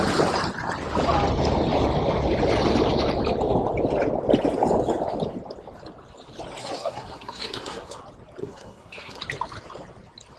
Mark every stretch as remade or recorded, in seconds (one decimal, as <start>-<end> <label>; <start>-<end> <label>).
0.0-6.6 recorded; 6.6-8.0 remade; 8.0-8.4 recorded; 8.4-9.2 remade; 9.2-10.4 recorded